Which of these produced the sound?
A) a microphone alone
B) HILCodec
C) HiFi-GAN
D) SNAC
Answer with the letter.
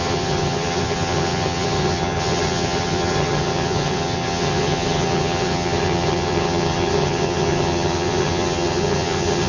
C